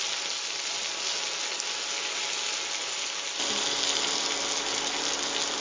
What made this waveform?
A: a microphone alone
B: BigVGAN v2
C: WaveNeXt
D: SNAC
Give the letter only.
A